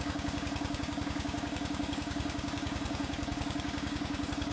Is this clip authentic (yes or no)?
no